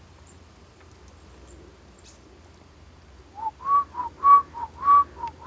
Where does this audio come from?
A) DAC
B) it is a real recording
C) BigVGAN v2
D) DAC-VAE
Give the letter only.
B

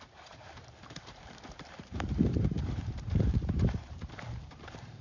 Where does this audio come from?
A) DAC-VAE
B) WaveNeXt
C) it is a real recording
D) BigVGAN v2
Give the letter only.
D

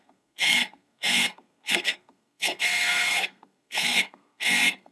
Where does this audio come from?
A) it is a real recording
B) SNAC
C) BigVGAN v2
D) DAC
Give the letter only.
B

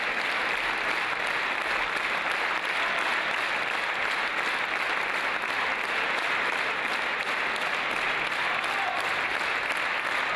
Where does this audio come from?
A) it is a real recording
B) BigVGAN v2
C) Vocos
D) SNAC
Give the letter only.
A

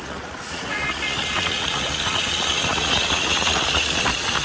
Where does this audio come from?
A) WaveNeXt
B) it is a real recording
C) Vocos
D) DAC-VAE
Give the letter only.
C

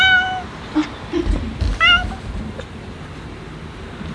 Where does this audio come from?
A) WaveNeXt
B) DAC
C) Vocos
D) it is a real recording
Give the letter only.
D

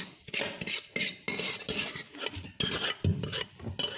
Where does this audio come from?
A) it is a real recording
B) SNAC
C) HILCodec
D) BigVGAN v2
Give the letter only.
A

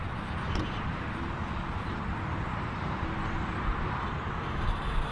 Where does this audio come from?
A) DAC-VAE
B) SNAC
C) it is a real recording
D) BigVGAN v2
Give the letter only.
C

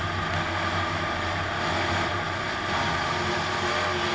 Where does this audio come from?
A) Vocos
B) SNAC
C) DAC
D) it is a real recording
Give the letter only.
D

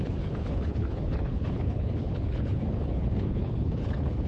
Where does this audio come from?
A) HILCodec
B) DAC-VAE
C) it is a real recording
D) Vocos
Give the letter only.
A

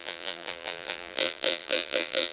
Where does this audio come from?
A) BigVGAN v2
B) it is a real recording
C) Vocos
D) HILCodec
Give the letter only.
A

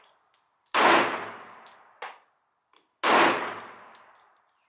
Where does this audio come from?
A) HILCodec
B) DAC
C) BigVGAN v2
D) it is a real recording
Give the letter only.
D